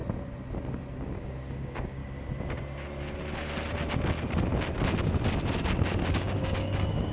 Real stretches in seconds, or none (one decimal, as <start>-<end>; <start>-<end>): 0.0-1.1; 2.0-6.1